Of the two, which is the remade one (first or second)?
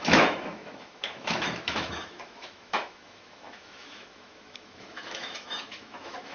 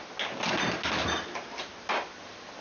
first